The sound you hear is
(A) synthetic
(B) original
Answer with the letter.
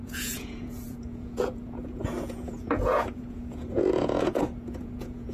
A